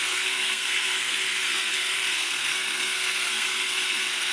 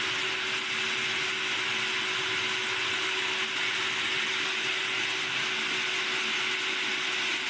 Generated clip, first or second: first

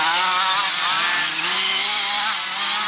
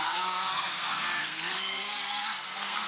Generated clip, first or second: second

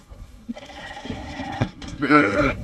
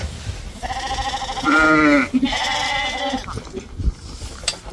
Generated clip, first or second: first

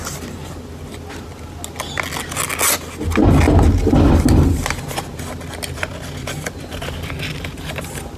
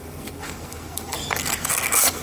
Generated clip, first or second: second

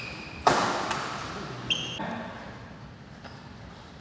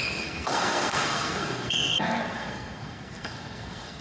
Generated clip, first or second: second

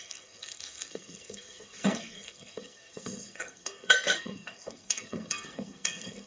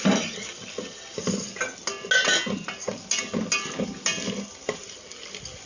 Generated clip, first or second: first